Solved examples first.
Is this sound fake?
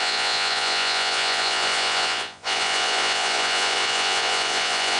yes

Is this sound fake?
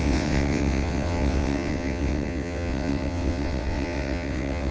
yes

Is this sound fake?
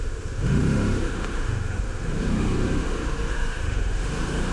yes